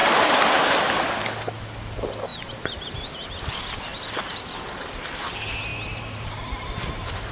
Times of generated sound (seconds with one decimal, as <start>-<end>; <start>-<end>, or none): 0.0-0.6; 2.3-3.3; 3.9-5.3; 5.7-7.3